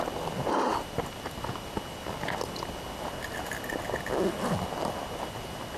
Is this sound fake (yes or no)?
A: no